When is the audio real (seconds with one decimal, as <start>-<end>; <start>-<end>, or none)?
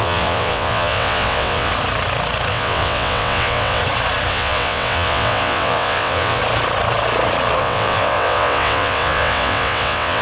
1.7-2.5; 3.8-4.3; 6.4-7.6